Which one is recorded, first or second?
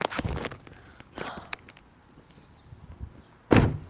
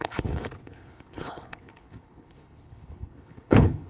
first